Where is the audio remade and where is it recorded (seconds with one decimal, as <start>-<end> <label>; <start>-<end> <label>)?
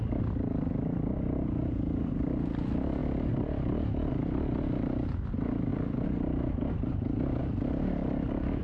0.0-8.6 recorded